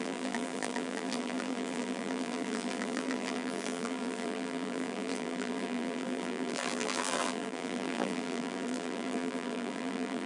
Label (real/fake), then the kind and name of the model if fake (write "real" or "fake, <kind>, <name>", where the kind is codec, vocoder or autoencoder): fake, vocoder, BigVGAN v2